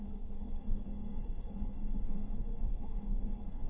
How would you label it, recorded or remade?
remade